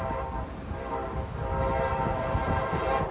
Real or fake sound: real